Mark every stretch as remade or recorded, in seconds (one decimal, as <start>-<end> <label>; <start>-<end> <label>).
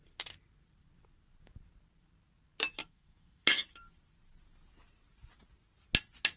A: 0.0-2.8 recorded; 2.8-3.8 remade; 3.8-6.4 recorded